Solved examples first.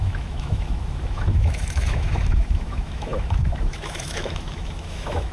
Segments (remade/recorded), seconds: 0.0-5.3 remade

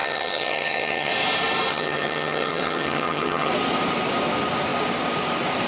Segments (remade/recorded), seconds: 0.0-1.1 remade; 1.1-1.7 recorded; 1.7-3.5 remade; 3.5-5.7 recorded

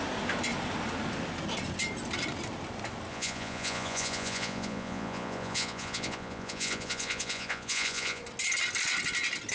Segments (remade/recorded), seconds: 0.0-3.1 recorded; 3.1-8.2 remade; 8.2-9.5 recorded

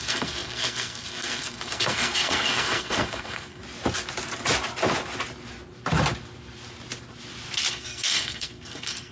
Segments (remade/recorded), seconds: 0.0-3.6 remade; 3.6-7.7 recorded; 7.7-9.1 remade